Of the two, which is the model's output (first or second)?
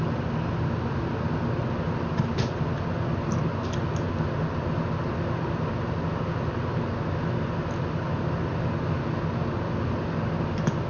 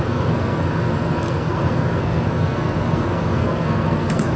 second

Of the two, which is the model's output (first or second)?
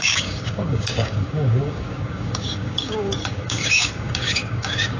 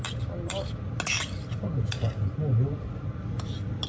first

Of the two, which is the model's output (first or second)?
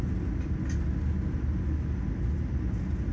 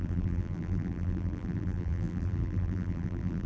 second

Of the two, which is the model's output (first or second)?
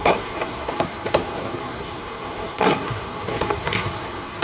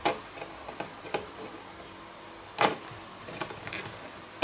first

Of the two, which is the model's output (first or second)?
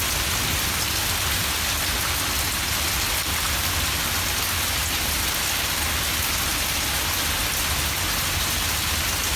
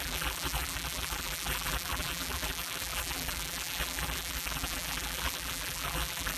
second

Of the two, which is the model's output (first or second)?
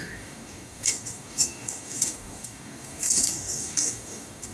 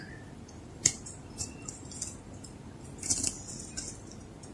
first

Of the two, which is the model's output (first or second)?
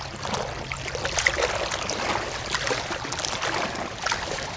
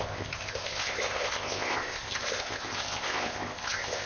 second